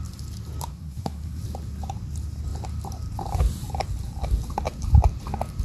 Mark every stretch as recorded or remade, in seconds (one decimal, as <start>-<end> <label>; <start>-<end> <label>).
0.0-0.7 recorded; 0.7-1.4 remade; 1.4-5.6 recorded